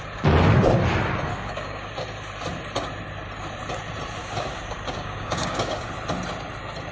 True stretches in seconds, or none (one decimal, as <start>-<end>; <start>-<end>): 0.0-1.3; 1.9-4.2; 5.9-6.9